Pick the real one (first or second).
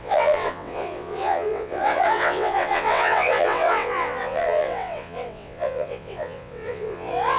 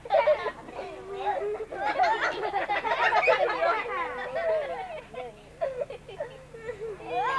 second